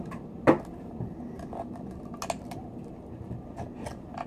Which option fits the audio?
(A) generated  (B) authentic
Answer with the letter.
B